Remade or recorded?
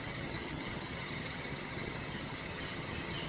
remade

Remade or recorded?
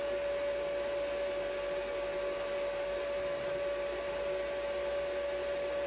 recorded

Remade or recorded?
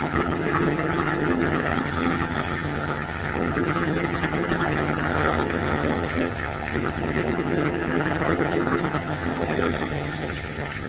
remade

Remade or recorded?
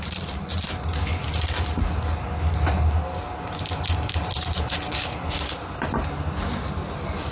recorded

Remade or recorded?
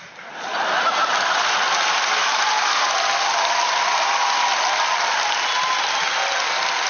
recorded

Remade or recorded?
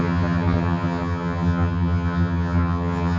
remade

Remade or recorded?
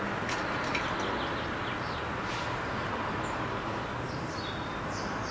recorded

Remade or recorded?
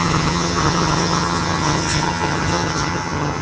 remade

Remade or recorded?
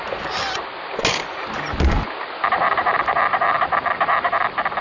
recorded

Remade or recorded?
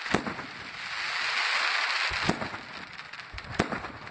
recorded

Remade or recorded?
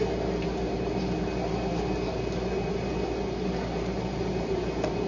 recorded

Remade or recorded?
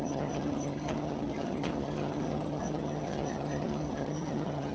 remade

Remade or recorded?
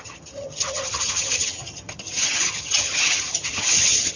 remade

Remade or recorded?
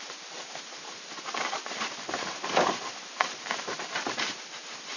recorded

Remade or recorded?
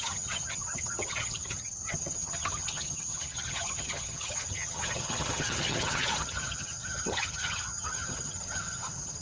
remade